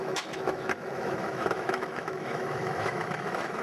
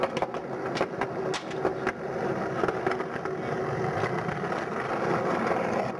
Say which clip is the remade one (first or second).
first